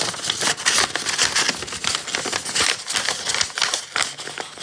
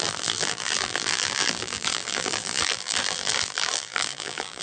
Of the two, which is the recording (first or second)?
first